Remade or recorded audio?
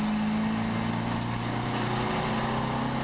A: recorded